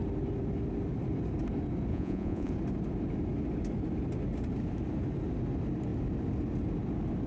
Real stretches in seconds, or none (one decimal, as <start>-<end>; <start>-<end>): 0.0-1.9; 2.5-7.3